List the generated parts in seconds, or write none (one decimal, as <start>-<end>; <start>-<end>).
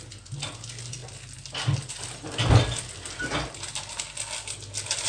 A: none